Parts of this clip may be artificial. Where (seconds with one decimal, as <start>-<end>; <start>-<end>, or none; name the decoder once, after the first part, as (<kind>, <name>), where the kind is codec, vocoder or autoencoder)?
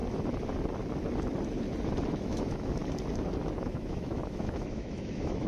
2.1-2.8 (autoencoder, DAC-VAE); 3.6-5.5